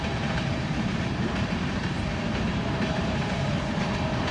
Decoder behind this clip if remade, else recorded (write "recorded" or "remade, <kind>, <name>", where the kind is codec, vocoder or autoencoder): remade, vocoder, BigVGAN v2